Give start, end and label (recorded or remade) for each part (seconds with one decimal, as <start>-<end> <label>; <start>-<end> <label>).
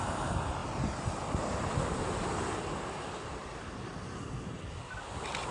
0.0-5.5 recorded